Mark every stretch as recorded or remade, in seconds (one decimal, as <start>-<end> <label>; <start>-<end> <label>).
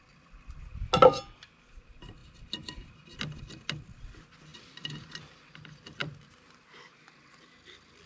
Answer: 0.0-8.1 recorded